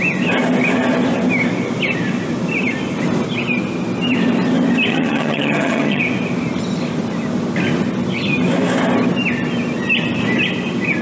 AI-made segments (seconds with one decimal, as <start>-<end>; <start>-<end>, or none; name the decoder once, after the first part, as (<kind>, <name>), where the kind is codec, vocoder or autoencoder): 4.9-6.0 (vocoder, HiFi-GAN)